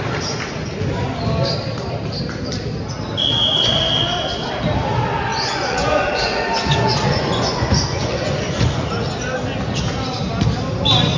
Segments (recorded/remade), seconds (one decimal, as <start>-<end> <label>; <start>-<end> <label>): 0.0-5.3 recorded; 5.3-8.9 remade; 8.9-11.2 recorded